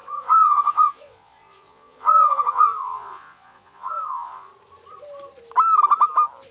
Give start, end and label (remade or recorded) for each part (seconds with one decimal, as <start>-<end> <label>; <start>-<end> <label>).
0.0-4.5 remade; 4.5-6.5 recorded